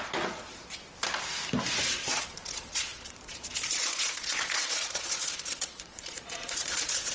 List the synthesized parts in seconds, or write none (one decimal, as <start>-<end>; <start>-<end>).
0.0-0.6; 1.8-7.1